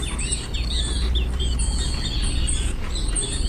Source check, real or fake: real